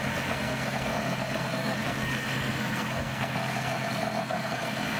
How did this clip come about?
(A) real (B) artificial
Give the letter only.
B